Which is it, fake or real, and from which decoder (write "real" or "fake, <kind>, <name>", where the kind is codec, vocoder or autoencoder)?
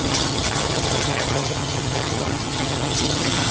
fake, vocoder, HiFi-GAN